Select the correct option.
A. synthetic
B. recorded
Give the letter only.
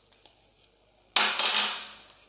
B